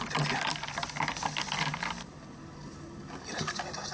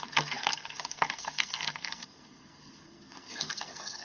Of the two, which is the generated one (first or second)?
second